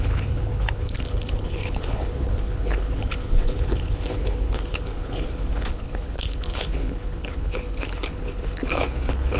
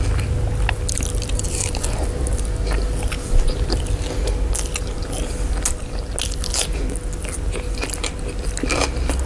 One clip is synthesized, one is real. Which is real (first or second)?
second